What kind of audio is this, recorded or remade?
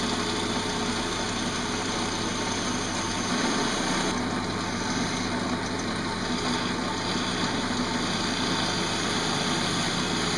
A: recorded